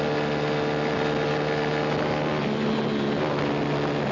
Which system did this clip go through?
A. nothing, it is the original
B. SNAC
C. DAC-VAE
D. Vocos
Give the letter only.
A